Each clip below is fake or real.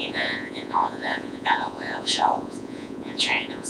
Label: fake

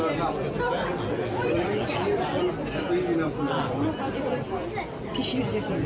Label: real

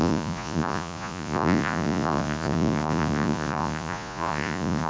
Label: fake